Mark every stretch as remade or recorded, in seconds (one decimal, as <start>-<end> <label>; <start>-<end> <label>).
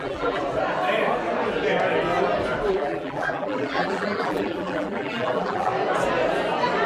0.0-0.4 remade; 0.4-2.7 recorded; 2.7-5.7 remade; 5.7-6.9 recorded